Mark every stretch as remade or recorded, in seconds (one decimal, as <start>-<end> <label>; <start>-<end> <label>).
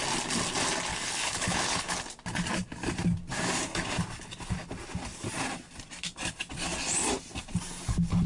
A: 0.0-0.9 recorded; 0.9-2.0 remade; 2.0-8.3 recorded